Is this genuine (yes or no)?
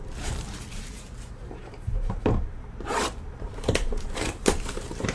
no